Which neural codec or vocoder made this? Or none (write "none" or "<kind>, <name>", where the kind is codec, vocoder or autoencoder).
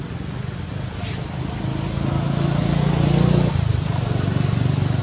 none